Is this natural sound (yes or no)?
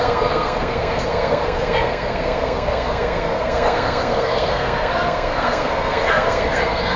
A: no